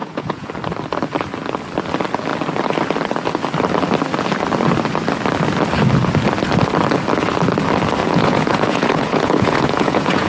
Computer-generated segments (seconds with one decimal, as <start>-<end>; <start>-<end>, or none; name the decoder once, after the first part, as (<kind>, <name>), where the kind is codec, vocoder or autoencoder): 0.0-0.5 (vocoder, Vocos); 8.0-10.3